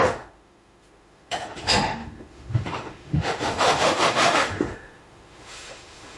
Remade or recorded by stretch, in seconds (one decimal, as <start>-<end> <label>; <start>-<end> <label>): 0.0-6.2 remade